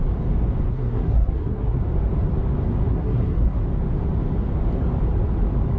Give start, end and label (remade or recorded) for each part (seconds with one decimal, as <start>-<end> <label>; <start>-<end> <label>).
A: 0.0-0.7 recorded; 0.7-1.8 remade; 1.8-2.9 recorded; 2.9-3.6 remade; 3.6-5.8 recorded